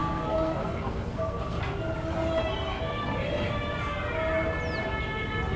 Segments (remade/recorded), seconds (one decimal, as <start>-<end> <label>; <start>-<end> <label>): 0.0-1.6 remade; 1.6-5.6 recorded